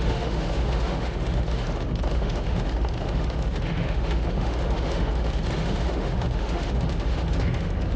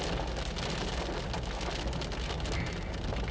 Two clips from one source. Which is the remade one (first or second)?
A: first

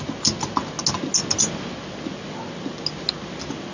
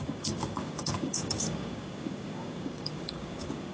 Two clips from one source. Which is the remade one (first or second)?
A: second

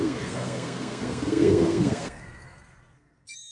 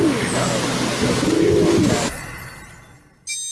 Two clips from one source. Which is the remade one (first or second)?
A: first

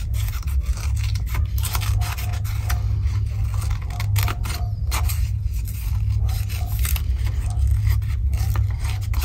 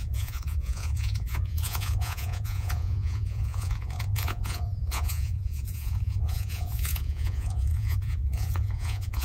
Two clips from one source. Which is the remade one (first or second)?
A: second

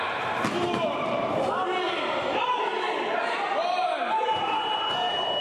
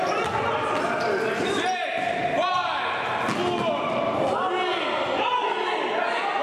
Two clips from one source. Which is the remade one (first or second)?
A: first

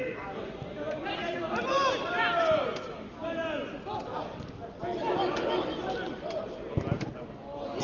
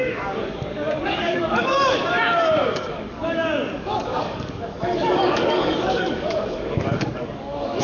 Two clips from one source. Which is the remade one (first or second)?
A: second